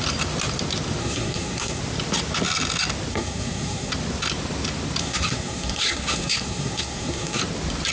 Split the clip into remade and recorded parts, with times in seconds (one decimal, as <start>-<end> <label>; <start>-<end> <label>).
0.0-1.0 recorded; 1.0-1.8 remade; 1.8-3.1 recorded; 3.1-3.9 remade; 3.9-5.0 recorded; 5.0-7.4 remade; 7.4-7.9 recorded